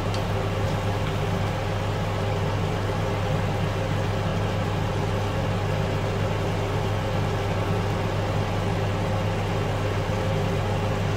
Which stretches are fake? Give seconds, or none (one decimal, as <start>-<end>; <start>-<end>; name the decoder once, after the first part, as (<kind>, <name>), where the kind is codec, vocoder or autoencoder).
none